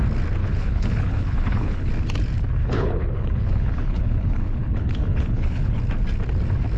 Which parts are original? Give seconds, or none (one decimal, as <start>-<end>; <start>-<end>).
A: 0.0-0.4; 1.9-2.6; 5.8-6.8